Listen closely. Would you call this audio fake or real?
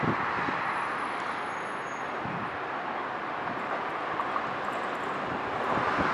real